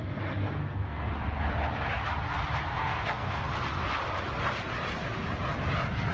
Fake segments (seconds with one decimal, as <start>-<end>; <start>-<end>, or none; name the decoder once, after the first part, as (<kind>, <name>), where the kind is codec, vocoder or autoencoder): 0.6-1.1 (codec, SNAC); 2.8-3.5